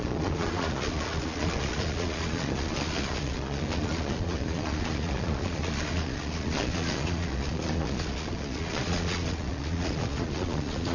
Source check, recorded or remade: remade